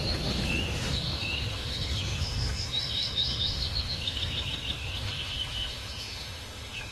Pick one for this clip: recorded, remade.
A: remade